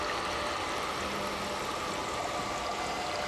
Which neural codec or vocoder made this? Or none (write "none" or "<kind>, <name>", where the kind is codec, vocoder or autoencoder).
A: none